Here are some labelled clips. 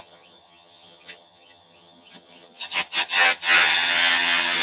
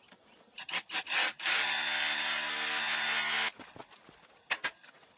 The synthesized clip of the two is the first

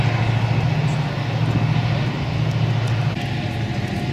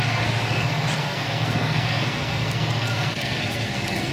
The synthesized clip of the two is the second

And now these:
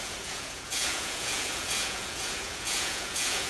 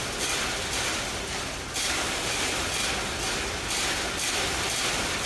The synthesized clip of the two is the first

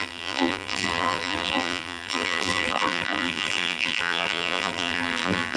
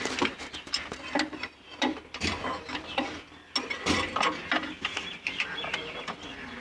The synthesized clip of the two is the first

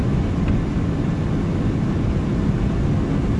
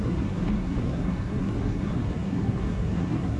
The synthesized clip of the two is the second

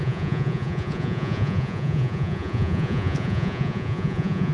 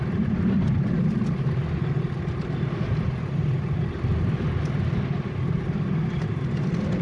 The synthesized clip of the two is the first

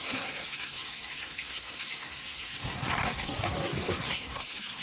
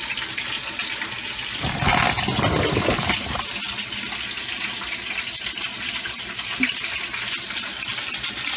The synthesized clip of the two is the first